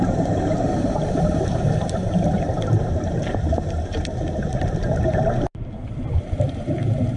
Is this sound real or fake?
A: fake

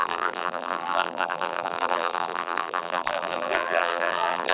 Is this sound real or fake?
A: fake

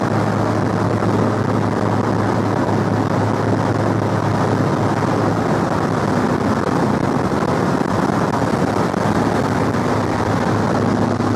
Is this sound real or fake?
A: real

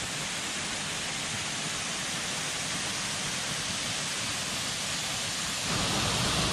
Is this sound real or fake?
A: real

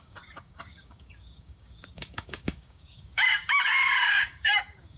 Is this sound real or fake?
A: fake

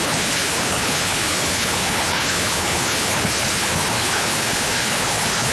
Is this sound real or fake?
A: fake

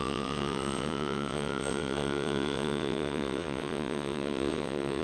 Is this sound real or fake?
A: fake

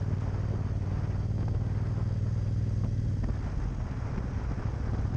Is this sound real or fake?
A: real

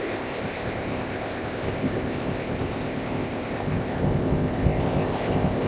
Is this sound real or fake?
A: fake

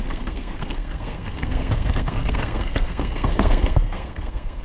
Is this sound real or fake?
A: fake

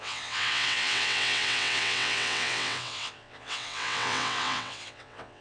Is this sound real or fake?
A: fake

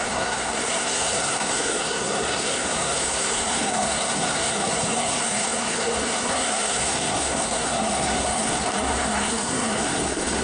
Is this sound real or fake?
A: fake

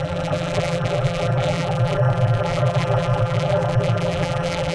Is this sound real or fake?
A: fake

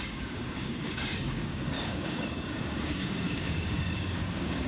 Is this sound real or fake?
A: fake